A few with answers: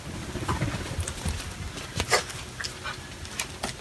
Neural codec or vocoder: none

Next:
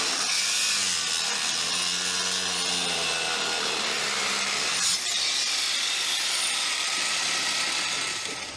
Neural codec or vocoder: none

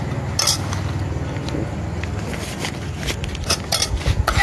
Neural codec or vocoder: none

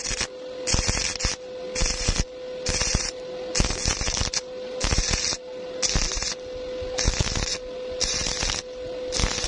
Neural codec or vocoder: none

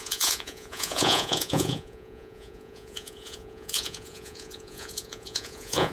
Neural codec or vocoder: vocoder, Vocos